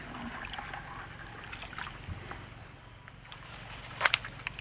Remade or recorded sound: recorded